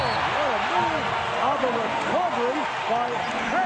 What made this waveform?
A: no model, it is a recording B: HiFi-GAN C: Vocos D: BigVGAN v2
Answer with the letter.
A